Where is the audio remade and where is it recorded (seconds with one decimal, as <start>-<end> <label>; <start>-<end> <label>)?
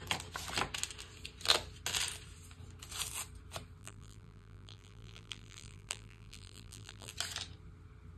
0.0-3.8 recorded; 3.8-7.1 remade; 7.1-8.2 recorded